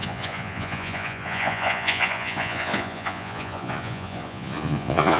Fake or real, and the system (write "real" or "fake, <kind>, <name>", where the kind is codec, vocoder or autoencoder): fake, vocoder, Vocos